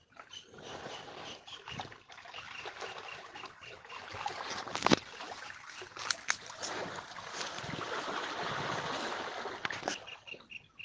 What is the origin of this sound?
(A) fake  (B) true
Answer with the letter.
A